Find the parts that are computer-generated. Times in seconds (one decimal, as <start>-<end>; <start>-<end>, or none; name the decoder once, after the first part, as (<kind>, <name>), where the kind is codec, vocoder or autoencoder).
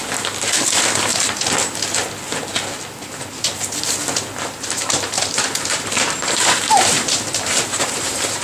0.6-1.1 (vocoder, BigVGAN v2); 4.4-8.4